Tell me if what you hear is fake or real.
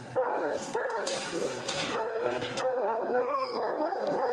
fake